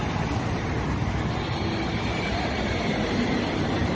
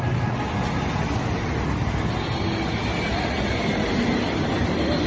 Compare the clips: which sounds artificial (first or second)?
first